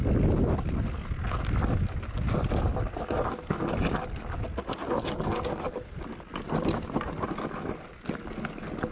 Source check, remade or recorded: recorded